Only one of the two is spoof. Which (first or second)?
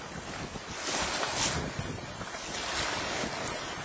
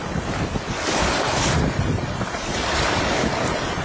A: second